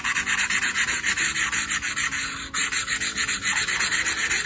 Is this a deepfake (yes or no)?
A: no